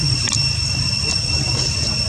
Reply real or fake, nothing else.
real